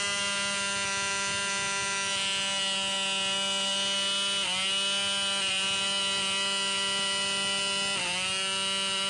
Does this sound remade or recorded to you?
recorded